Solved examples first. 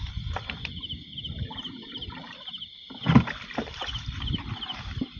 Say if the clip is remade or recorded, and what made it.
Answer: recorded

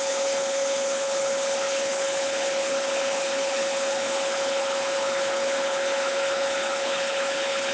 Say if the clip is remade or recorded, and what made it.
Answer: remade, codec, HILCodec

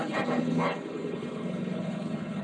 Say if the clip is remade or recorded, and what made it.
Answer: remade, codec, HILCodec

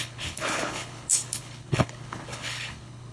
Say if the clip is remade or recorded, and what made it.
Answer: remade, codec, HILCodec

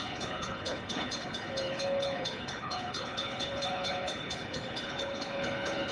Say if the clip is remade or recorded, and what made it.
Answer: remade, codec, HILCodec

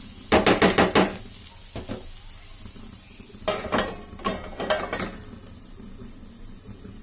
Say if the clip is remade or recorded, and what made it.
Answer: recorded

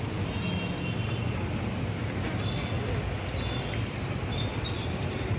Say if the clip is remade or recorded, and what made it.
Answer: recorded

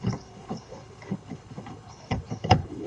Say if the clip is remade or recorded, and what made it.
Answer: remade, codec, HILCodec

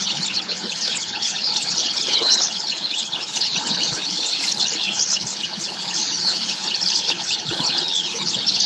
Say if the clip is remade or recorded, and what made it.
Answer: remade, codec, HILCodec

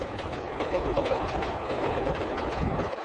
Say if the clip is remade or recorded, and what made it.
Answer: remade, codec, HILCodec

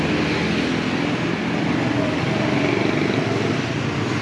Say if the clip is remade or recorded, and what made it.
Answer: recorded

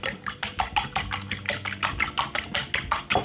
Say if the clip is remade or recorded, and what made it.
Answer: recorded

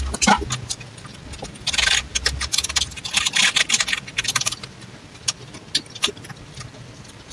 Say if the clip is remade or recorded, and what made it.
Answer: recorded